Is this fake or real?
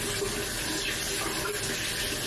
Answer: real